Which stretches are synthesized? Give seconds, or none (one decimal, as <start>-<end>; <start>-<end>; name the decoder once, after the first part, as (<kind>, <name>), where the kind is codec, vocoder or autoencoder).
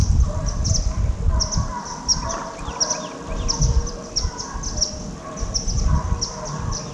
0.0-1.2 (vocoder, BigVGAN v2); 2.1-4.1